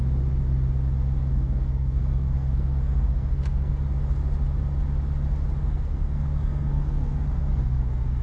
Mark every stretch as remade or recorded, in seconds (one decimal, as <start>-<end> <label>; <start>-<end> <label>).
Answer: 0.0-1.3 recorded; 1.3-3.7 remade; 3.7-5.6 recorded; 5.6-8.2 remade